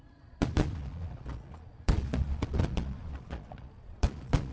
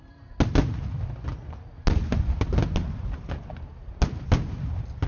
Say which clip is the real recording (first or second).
second